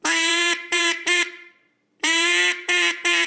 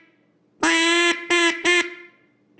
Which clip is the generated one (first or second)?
first